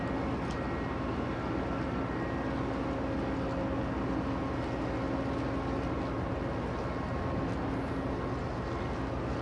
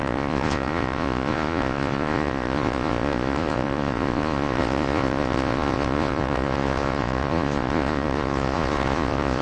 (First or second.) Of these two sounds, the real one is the first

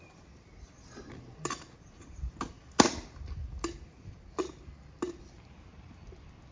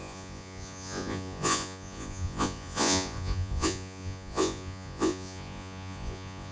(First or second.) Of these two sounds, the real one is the first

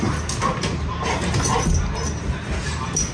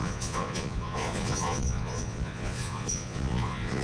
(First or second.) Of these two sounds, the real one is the first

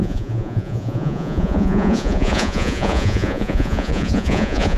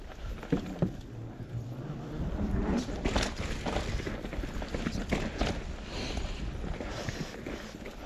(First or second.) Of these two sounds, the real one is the second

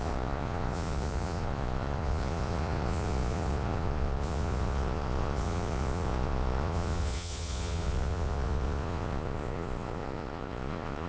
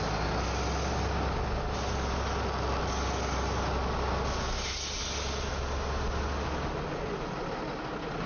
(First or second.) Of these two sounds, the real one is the second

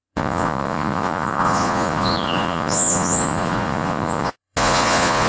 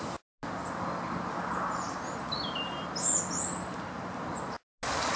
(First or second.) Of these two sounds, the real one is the second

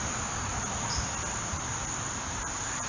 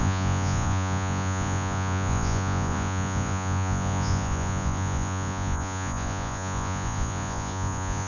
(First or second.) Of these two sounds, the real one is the first